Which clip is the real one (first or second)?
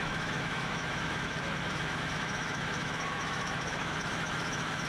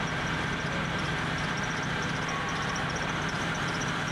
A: second